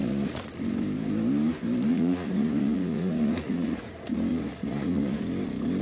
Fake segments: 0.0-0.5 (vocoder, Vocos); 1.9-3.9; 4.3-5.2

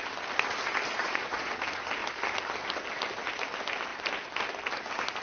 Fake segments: 0.9-1.6 (vocoder, Vocos)

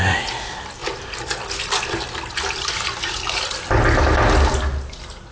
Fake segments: none

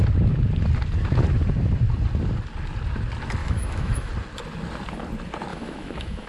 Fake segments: 3.4-4.1 (autoencoder, DAC-VAE); 5.5-6.3

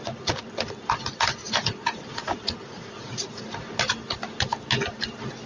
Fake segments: 1.4-3.5 (vocoder, Vocos)

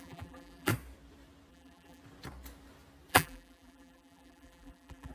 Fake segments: 0.0-0.7 (vocoder, BigVGAN v2); 1.5-2.0; 3.1-5.1

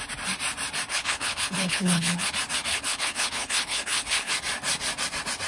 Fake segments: 0.9-2.3 (codec, HILCodec); 2.7-4.3